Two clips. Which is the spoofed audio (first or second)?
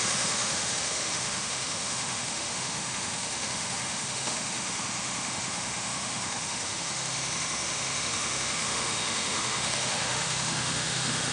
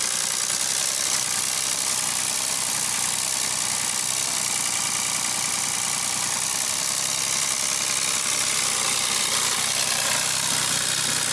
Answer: first